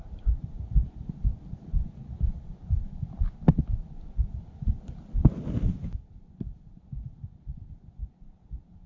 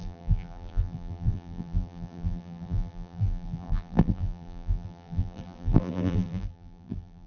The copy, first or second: second